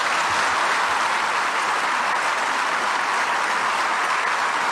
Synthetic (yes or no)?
no